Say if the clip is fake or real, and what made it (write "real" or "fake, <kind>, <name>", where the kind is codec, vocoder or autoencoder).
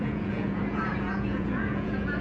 fake, vocoder, Vocos